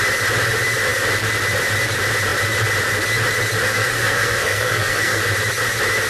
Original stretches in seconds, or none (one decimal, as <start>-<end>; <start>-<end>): 0.0-3.7; 5.2-6.1